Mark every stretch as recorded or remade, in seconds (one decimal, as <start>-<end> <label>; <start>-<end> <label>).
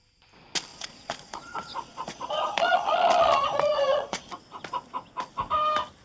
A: 0.0-0.7 recorded; 0.7-4.3 remade; 4.3-6.0 recorded